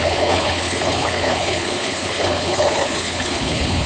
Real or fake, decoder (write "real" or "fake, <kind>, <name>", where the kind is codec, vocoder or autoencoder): fake, codec, HILCodec